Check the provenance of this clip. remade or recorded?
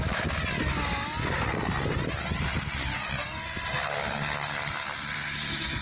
recorded